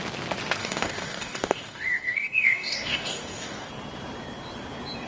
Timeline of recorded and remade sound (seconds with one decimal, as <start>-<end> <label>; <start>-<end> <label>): 0.0-0.6 recorded; 0.6-3.7 remade; 3.7-5.1 recorded